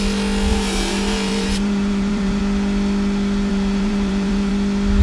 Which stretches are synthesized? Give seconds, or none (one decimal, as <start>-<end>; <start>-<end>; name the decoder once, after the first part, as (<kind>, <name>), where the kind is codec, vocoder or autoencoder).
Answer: 0.5-2.4 (vocoder, BigVGAN v2); 3.5-4.5